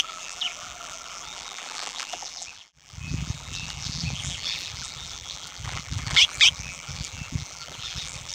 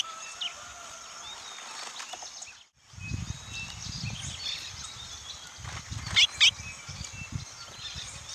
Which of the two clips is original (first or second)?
second